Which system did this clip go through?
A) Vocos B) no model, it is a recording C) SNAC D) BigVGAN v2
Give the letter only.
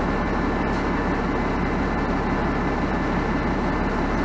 B